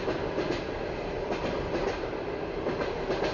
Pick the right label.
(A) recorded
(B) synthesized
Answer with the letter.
A